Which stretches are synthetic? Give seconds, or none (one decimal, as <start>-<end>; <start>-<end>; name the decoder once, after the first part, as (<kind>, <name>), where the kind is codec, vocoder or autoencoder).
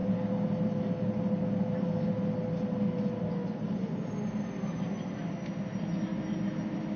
6.1-7.0 (vocoder, BigVGAN v2)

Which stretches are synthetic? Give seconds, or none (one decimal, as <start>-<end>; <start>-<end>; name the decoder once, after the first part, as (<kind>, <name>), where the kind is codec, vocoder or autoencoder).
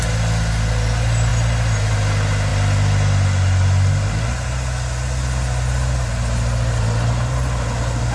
none